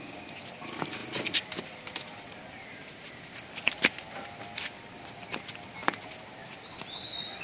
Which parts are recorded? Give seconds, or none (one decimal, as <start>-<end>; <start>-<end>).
0.0-1.0; 4.1-7.4